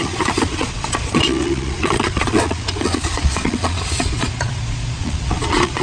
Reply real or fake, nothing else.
fake